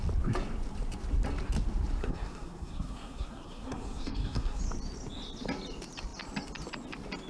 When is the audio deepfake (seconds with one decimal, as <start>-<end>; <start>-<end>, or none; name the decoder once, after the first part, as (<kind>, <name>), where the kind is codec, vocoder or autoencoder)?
2.0-4.6 (codec, SNAC)